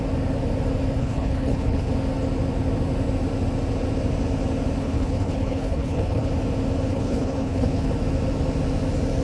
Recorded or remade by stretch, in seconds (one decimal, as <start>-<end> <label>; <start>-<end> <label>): 0.0-1.0 recorded; 1.0-1.9 remade; 1.9-4.8 recorded; 4.8-6.3 remade; 6.3-6.9 recorded; 6.9-7.9 remade; 7.9-9.2 recorded